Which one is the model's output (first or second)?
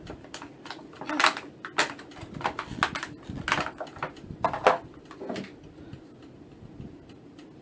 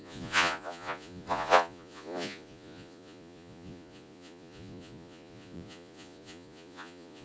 second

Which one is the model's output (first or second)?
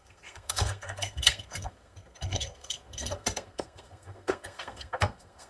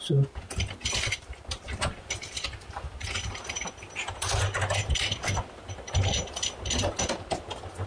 first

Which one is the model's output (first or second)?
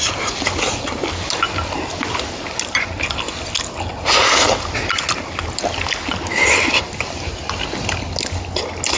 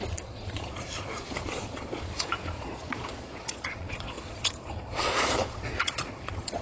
second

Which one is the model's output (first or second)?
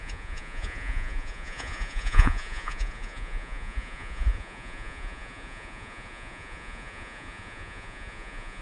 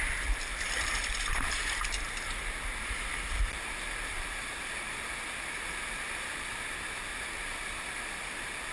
first